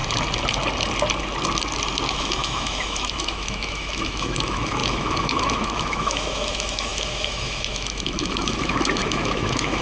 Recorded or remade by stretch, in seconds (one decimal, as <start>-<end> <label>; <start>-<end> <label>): 0.0-2.2 recorded; 2.2-9.8 remade